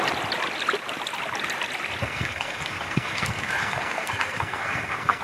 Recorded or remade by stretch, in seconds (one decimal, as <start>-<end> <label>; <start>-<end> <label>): 0.0-2.0 recorded; 2.0-5.2 remade